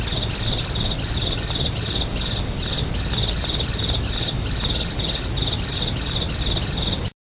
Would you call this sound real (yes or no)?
yes